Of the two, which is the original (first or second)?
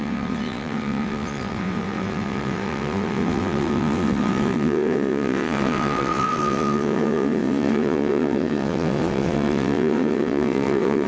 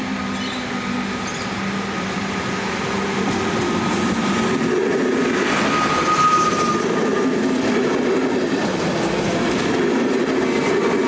second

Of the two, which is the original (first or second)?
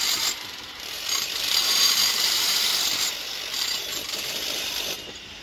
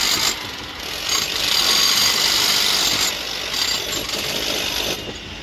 second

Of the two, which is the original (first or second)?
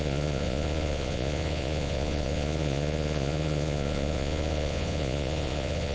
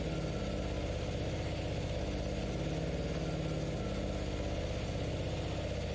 second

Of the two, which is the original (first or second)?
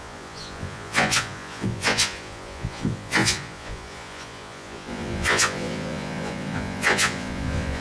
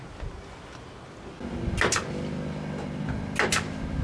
second